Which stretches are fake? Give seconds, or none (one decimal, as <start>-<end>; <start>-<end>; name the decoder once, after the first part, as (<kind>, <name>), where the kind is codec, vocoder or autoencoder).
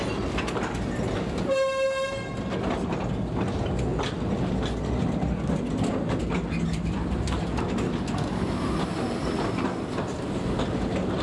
none